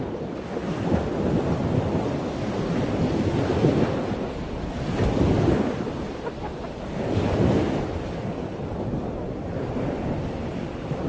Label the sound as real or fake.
real